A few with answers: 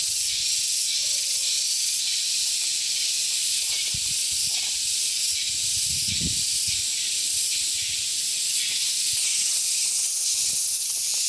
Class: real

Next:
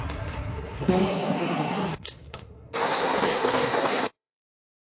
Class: fake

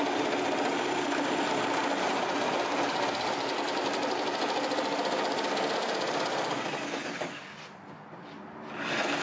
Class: real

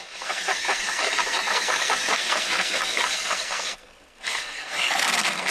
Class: fake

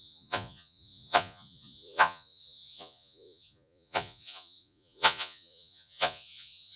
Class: fake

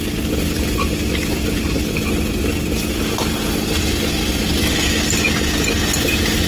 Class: real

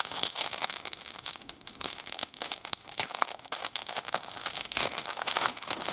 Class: fake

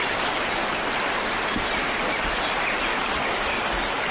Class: real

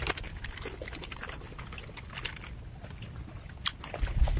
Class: real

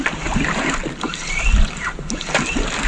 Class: real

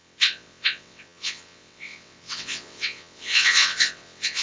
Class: fake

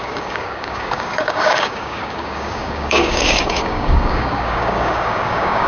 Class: fake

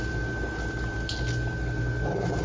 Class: real